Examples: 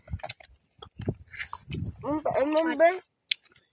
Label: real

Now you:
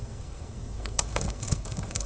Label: fake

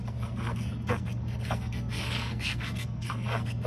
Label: fake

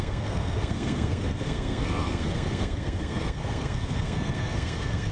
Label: fake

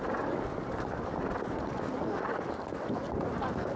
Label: real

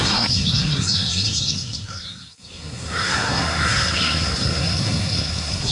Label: fake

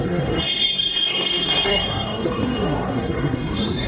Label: fake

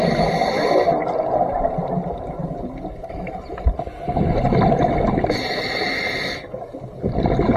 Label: real